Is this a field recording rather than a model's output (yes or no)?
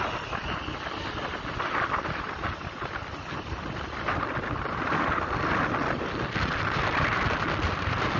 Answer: yes